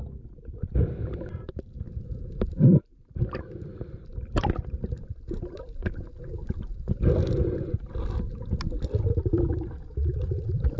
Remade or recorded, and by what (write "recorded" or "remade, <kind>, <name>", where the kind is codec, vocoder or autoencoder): remade, vocoder, BigVGAN v2